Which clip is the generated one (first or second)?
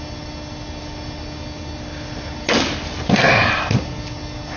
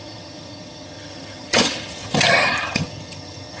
second